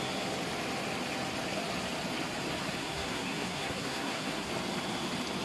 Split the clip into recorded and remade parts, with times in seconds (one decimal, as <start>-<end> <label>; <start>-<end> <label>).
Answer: 0.0-2.8 recorded; 2.8-4.5 remade; 4.5-5.4 recorded